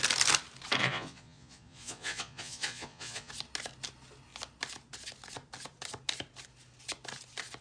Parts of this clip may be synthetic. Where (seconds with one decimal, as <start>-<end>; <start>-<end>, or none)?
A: 0.8-3.3